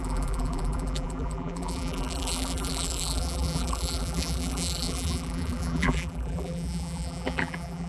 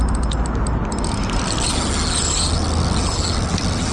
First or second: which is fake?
first